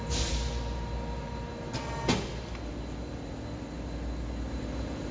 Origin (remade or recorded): recorded